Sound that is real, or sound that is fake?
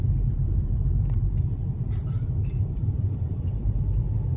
fake